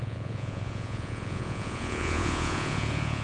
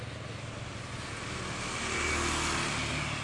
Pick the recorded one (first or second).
second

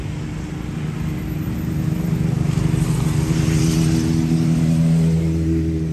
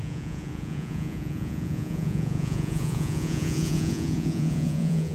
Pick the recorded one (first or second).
first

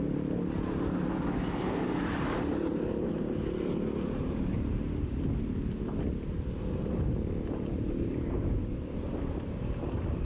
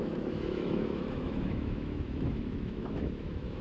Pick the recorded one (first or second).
first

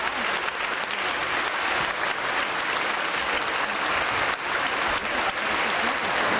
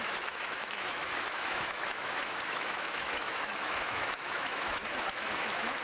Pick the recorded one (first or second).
first